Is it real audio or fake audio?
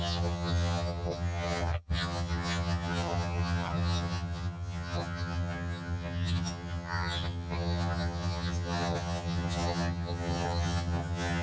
fake